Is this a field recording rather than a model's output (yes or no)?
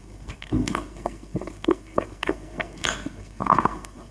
no